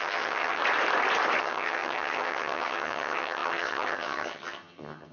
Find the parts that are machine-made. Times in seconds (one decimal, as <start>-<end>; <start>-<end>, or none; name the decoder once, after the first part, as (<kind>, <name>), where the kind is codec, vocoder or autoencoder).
0.0-0.6 (vocoder, HiFi-GAN); 1.4-5.1